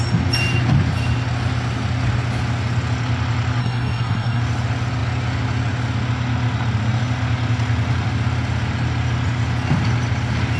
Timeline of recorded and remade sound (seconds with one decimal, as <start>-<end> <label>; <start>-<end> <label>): 0.0-3.6 recorded; 3.6-4.4 remade; 4.4-10.6 recorded